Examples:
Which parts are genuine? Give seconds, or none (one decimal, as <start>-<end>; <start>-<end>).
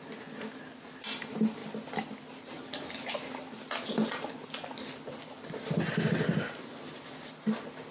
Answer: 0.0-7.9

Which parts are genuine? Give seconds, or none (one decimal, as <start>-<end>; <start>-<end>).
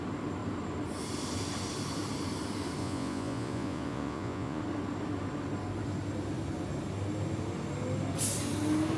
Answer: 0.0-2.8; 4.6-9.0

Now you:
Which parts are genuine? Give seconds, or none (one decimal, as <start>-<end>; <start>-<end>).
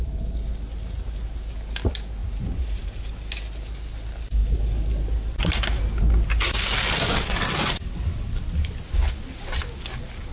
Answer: 0.0-2.2; 3.0-10.3